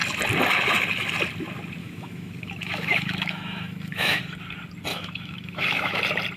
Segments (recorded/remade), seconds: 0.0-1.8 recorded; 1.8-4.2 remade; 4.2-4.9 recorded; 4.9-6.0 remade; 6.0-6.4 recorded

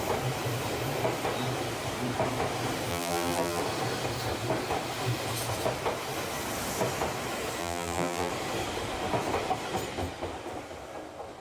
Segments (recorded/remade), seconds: 0.0-2.9 recorded; 2.9-3.6 remade; 3.6-7.6 recorded; 7.6-8.3 remade; 8.3-11.4 recorded